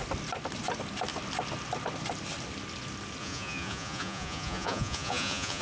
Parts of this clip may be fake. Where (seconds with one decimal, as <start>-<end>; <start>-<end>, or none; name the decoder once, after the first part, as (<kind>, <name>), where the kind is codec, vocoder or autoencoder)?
3.2-5.6 (vocoder, Vocos)